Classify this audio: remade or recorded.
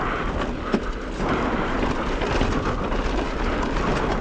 recorded